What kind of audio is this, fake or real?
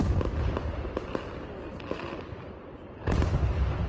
real